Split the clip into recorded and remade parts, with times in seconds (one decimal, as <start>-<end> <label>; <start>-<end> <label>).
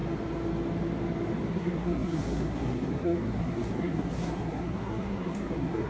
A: 0.0-1.5 recorded; 1.5-5.9 remade